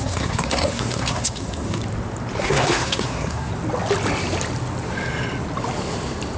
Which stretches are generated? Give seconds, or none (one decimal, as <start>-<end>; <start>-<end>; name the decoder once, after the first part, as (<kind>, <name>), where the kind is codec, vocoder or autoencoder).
0.0-1.8 (codec, SNAC); 2.4-3.5